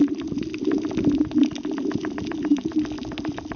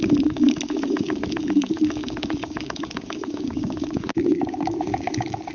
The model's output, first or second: second